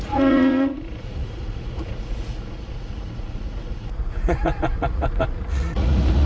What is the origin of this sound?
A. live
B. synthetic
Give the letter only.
B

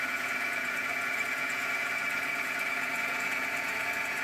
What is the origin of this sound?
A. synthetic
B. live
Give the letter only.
A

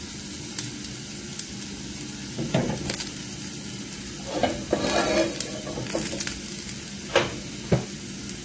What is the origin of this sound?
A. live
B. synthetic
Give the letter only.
A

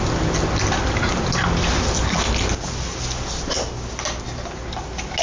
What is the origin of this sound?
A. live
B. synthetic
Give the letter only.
A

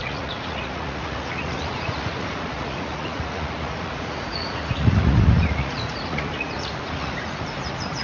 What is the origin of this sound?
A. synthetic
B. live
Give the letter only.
A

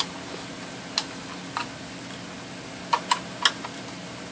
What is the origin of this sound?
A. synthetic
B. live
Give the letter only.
B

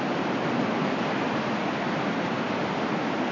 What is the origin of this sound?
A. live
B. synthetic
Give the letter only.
A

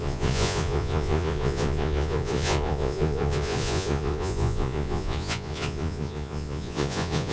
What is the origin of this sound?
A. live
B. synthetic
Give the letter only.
B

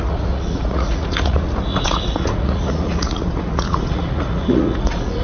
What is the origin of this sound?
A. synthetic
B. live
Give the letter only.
A